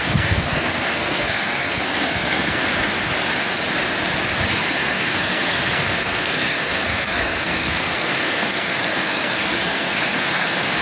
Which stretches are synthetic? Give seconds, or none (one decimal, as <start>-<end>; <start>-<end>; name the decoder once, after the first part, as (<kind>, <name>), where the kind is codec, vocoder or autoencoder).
0.0-2.6 (codec, SNAC); 4.5-10.8